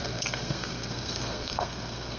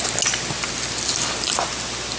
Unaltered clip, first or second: second